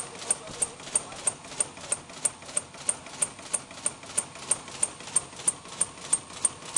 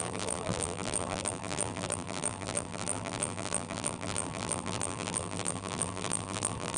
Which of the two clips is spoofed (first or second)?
second